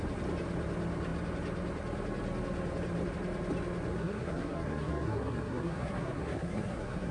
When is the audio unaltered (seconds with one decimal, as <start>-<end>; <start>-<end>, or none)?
0.0-3.9